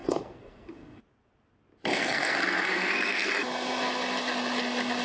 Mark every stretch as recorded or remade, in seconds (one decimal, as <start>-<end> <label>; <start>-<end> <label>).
0.0-1.0 remade; 1.0-1.9 recorded; 1.9-3.3 remade; 3.3-5.0 recorded